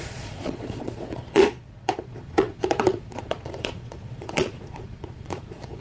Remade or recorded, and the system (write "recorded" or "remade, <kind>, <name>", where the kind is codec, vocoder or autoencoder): remade, vocoder, Vocos